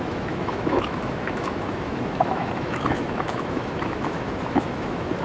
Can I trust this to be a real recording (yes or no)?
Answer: no